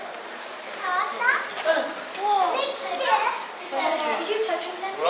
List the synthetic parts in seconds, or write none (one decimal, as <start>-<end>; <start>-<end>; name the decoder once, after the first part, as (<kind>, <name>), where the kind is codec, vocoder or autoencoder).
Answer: none